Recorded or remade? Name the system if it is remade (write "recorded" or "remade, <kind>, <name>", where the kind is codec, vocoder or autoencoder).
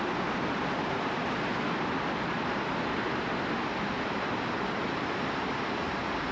remade, vocoder, BigVGAN v2